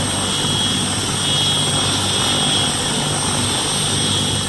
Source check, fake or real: real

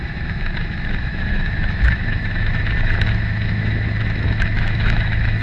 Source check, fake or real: fake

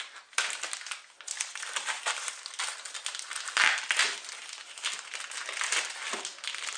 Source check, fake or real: real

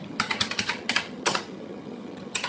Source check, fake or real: fake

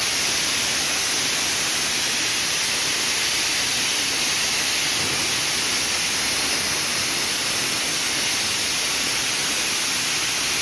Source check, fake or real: real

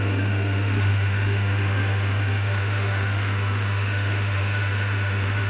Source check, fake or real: fake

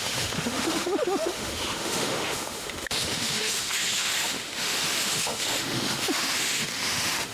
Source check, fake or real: fake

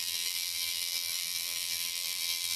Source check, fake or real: fake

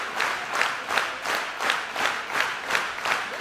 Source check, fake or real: real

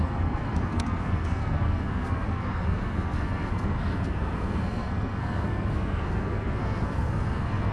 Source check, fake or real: fake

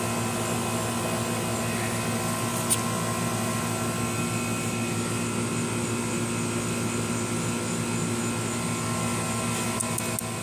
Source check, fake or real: real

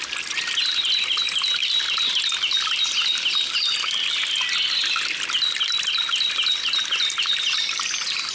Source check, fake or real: real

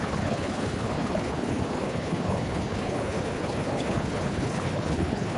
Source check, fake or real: fake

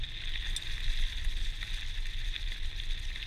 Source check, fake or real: real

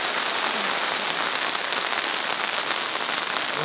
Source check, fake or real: real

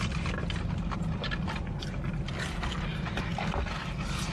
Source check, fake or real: real